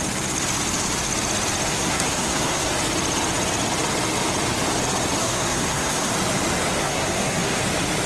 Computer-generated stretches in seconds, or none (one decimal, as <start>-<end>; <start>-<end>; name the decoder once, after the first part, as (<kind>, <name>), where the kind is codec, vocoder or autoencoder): 1.7-2.7 (codec, SNAC); 5.2-6.1; 6.8-7.6